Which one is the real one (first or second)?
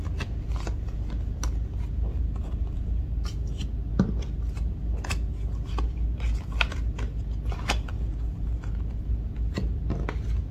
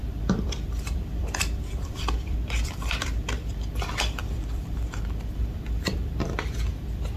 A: first